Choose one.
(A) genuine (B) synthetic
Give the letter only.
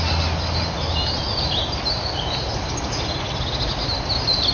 A